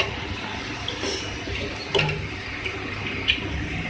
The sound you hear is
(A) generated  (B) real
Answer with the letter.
B